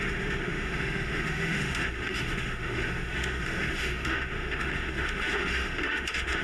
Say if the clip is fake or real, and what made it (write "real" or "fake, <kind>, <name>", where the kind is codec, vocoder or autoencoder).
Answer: fake, autoencoder, DAC-VAE